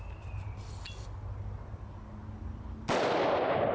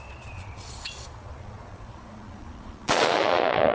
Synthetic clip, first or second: second